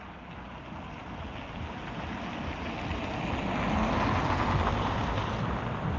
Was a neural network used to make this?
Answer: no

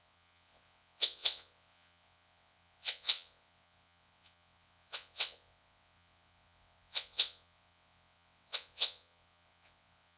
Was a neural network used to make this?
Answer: yes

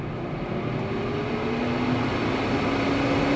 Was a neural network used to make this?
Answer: no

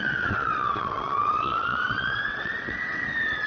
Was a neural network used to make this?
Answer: yes